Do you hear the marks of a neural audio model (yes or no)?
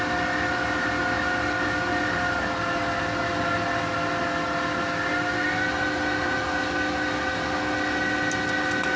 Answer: no